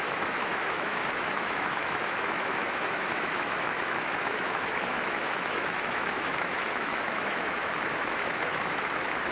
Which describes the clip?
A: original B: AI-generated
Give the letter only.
B